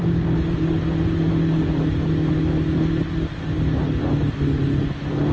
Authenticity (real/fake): real